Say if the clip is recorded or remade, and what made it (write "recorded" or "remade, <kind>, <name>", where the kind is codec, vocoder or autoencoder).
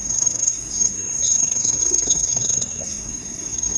remade, codec, SNAC